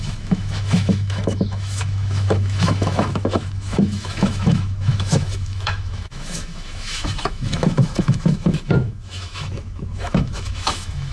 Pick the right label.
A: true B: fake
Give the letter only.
B